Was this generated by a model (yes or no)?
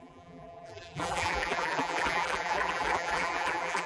yes